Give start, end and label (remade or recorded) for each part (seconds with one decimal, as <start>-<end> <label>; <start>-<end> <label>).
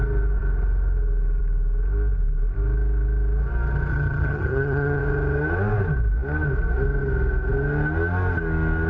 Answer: 0.0-3.9 recorded; 3.9-5.0 remade; 5.0-8.9 recorded